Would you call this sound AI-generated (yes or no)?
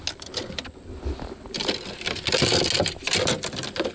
no